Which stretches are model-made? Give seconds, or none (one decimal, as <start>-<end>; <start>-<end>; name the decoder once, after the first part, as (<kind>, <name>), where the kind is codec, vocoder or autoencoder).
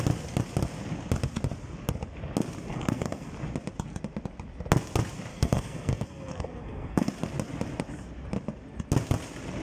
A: 2.7-3.3 (codec, SNAC); 5.3-7.1